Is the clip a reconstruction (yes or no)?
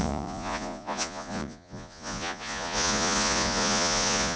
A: yes